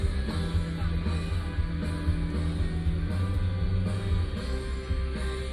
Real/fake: real